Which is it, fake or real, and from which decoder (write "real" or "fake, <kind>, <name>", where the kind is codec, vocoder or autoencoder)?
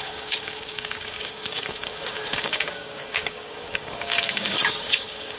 fake, codec, DAC